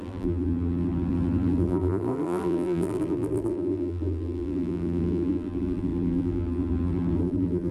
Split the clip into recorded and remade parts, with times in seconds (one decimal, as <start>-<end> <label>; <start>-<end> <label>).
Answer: 0.0-7.7 remade